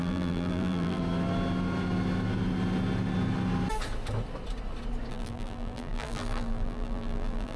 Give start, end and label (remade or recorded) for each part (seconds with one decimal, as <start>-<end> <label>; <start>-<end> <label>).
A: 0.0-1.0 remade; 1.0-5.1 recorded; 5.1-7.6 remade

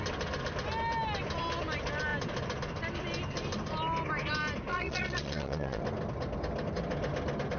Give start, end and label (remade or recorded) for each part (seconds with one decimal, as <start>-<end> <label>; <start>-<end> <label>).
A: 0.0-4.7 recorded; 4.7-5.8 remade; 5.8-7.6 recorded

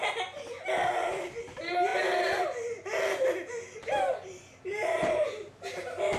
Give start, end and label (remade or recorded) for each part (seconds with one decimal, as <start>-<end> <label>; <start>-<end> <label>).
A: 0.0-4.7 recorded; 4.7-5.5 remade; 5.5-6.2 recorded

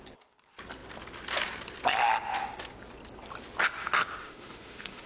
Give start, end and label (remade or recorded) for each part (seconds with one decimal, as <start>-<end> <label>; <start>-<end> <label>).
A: 0.0-4.2 recorded; 4.2-5.1 remade

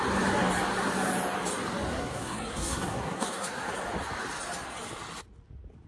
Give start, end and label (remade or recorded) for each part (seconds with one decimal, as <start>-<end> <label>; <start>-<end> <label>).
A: 0.0-1.9 recorded; 1.9-3.7 remade; 3.7-5.9 recorded